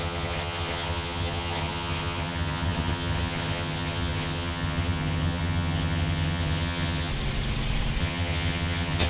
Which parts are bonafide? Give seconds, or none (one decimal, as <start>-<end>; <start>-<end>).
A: 7.1-8.0